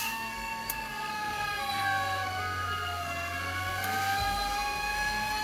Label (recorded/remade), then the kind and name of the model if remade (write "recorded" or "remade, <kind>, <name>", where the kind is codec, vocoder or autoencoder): remade, codec, SNAC